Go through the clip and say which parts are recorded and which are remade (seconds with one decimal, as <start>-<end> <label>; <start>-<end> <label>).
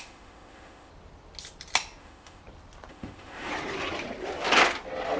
0.0-0.9 remade; 0.9-2.0 recorded; 2.0-2.4 remade; 2.4-2.9 recorded; 2.9-3.5 remade; 3.5-5.2 recorded